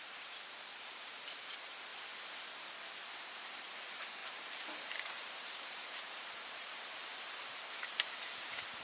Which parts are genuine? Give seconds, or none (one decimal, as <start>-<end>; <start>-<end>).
1.9-3.1